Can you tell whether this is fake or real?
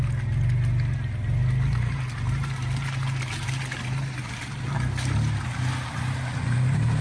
real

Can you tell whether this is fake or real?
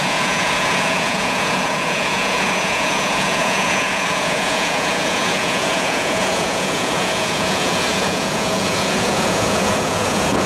fake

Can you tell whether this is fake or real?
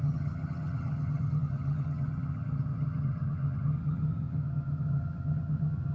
fake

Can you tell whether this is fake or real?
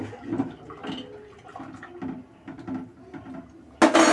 real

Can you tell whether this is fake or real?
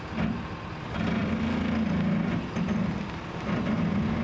real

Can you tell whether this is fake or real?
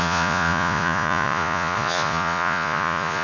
fake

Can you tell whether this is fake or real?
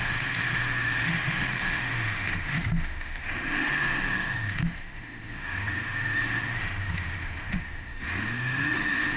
fake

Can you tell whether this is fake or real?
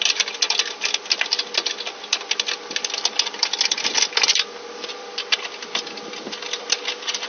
real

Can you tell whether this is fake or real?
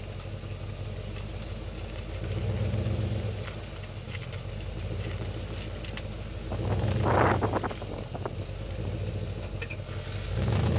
real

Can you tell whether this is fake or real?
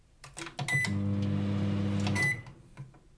real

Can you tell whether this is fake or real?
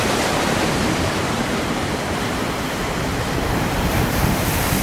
fake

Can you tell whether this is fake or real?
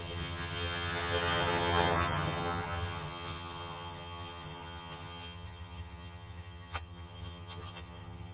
fake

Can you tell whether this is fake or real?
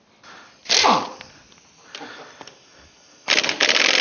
real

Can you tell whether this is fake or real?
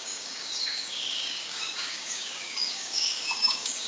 fake